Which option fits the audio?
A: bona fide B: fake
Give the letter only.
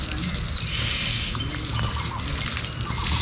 A